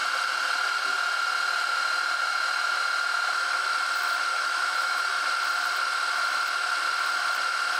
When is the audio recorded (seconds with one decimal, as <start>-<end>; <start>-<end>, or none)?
0.0-4.3; 5.2-7.8